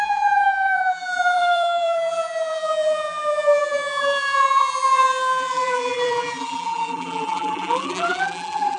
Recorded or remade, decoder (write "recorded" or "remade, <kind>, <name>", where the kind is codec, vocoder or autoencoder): remade, vocoder, BigVGAN v2